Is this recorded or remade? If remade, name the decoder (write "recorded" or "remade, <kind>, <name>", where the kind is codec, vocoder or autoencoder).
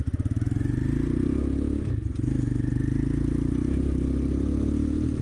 recorded